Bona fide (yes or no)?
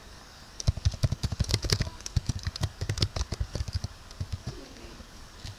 no